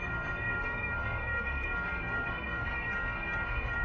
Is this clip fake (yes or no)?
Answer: yes